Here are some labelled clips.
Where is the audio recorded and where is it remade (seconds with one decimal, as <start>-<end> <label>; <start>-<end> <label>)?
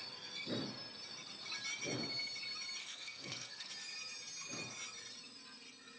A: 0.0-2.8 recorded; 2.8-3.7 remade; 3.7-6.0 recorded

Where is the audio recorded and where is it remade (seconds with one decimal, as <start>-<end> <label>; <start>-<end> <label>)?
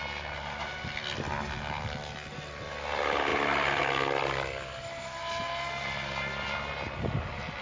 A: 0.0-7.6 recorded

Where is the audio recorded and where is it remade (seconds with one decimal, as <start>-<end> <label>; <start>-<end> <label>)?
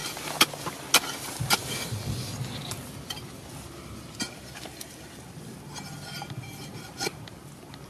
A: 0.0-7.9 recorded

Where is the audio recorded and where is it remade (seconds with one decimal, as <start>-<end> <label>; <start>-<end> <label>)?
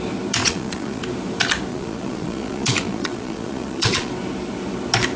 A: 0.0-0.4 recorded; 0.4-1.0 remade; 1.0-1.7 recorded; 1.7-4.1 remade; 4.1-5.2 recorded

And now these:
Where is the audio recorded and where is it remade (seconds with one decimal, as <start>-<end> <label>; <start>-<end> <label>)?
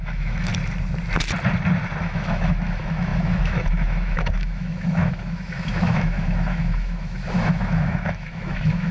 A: 0.0-0.5 remade; 0.5-2.0 recorded; 2.0-8.9 remade